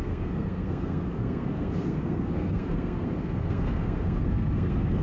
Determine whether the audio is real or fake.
fake